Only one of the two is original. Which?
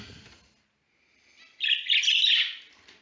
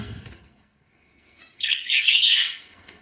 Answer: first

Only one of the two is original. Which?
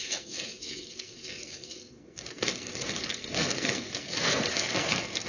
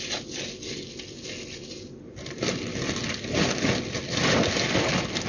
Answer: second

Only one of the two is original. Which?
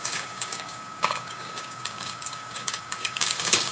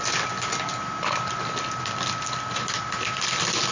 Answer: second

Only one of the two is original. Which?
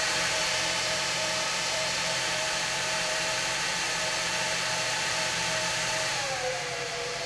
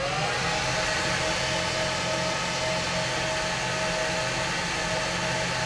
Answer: second